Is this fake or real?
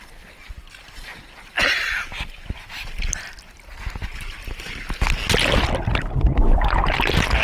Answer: real